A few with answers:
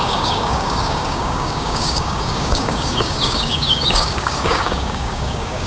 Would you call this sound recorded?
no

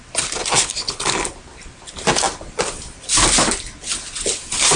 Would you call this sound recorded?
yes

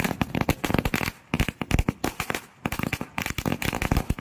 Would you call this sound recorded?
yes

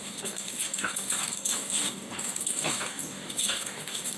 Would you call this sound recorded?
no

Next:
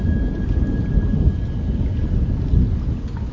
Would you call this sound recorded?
yes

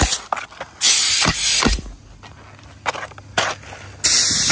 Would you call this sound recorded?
yes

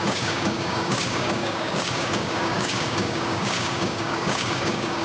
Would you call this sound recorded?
no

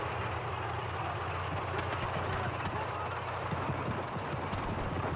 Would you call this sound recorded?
yes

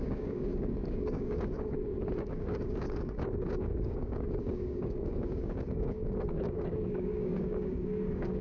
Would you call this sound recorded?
no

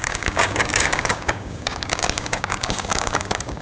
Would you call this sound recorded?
no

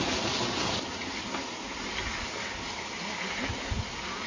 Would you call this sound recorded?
yes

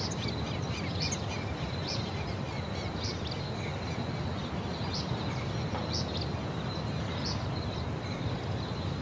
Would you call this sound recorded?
yes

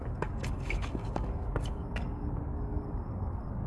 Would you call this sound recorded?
no